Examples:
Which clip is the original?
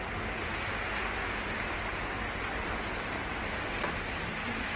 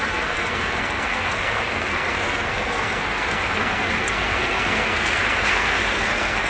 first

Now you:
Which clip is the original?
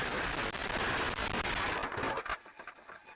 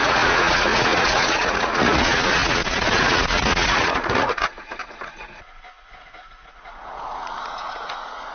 first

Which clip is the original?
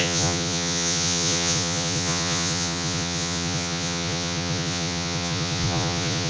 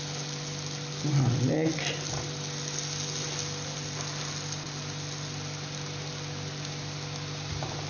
second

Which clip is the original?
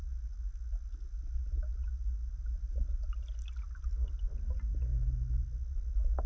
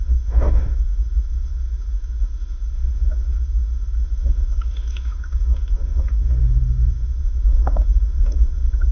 first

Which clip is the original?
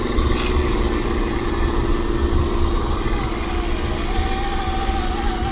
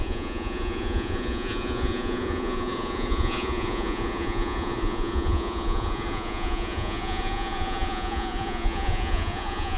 first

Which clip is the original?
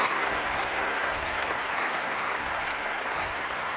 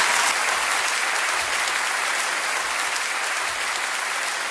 second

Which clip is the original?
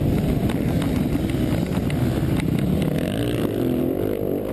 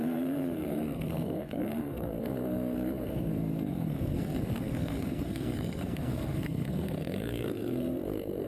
first